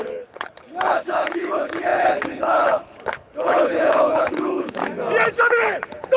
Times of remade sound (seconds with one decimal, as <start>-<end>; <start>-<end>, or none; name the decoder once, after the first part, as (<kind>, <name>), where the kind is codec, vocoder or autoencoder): 0.0-4.8 (codec, HILCodec); 5.4-6.2